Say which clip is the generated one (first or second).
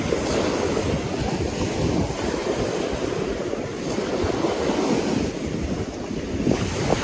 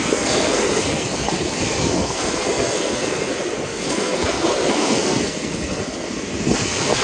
second